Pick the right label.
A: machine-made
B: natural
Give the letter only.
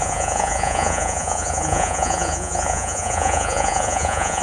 A